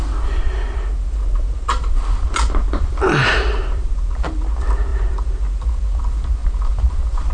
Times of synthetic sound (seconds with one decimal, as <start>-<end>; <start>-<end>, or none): 0.0-7.3